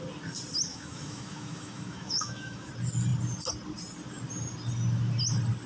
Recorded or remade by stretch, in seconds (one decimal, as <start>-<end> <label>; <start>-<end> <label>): 0.0-0.7 recorded; 0.7-2.7 remade; 2.7-5.7 recorded